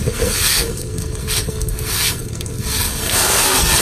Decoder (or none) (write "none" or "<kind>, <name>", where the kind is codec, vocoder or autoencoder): codec, SNAC